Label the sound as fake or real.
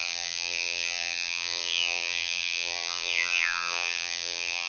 fake